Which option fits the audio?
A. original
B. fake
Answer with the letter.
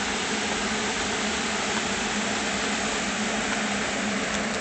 A